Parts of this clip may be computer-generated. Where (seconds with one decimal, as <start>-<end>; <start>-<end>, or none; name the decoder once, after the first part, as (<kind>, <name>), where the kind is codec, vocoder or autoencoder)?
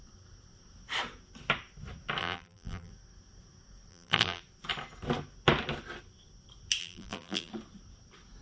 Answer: 2.2-2.9 (vocoder, BigVGAN v2); 3.9-4.4; 6.8-7.5